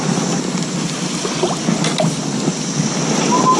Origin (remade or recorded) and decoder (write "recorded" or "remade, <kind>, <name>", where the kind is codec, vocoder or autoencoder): recorded